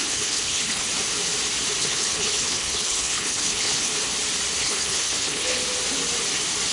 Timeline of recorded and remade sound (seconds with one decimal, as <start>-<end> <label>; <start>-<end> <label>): 0.0-0.9 remade; 0.9-1.8 recorded; 1.8-3.9 remade; 3.9-4.6 recorded; 4.6-5.6 remade; 5.6-6.7 recorded